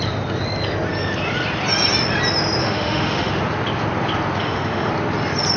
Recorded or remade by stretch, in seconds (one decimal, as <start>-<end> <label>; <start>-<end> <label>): 0.0-2.6 recorded; 2.6-3.3 remade; 3.3-4.4 recorded; 4.4-4.9 remade; 4.9-5.6 recorded